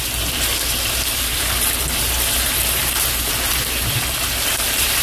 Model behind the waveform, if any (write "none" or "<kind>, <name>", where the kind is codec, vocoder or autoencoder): vocoder, BigVGAN v2